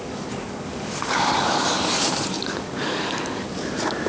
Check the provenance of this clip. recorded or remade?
remade